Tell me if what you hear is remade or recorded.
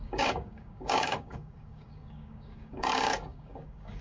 remade